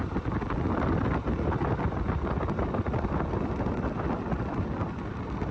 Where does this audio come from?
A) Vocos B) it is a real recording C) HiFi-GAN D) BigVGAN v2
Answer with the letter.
B